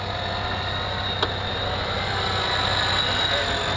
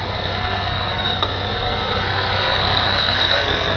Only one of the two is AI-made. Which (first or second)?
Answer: second